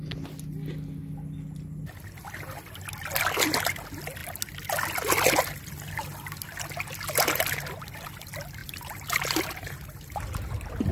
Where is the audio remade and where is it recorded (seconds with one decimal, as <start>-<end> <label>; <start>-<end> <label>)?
0.0-8.6 recorded; 8.6-10.5 remade; 10.5-10.9 recorded